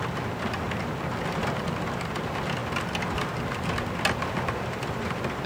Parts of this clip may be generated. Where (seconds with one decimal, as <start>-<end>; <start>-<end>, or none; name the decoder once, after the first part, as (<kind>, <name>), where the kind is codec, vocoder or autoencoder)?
none